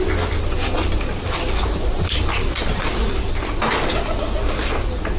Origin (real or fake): real